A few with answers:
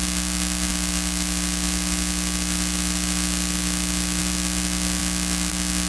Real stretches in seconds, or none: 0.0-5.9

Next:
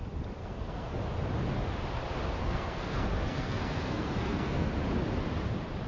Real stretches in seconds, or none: 0.0-0.4; 1.0-2.4; 4.7-5.9

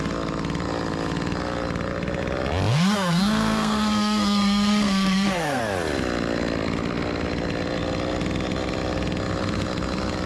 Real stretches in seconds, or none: 0.0-2.7; 5.6-10.3

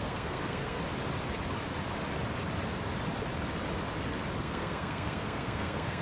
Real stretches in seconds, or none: 0.8-4.4

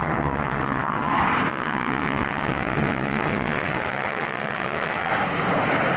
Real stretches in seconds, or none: 1.1-1.5; 5.1-6.0

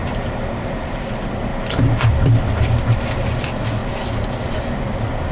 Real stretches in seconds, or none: 1.0-1.5; 2.1-5.3

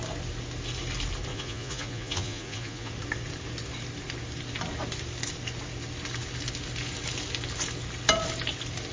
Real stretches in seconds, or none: 0.0-1.3; 2.9-8.9